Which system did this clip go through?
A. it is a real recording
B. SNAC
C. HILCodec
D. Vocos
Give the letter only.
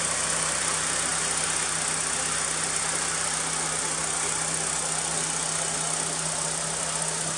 A